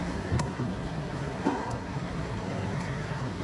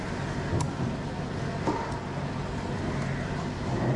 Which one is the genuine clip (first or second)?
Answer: second